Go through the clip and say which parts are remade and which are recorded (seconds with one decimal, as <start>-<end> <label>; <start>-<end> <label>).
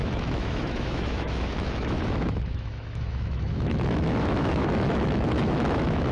0.0-6.1 remade